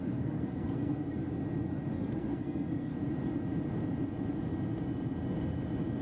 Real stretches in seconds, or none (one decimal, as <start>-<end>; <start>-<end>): 1.4-2.0; 2.9-6.0